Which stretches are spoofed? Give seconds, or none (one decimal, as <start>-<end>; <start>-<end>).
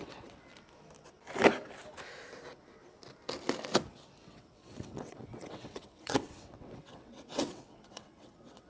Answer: 0.0-0.5; 4.3-8.7